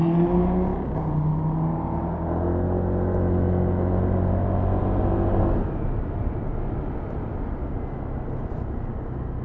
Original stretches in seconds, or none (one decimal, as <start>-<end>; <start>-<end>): 0.0-9.4